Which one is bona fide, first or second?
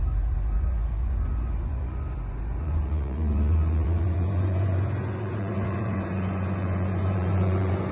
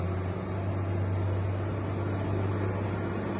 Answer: second